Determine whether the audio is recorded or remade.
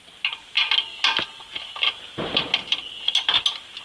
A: recorded